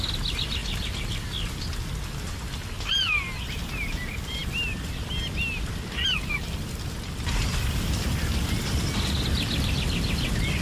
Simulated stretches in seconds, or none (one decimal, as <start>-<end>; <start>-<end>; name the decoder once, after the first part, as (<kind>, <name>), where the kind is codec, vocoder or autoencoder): none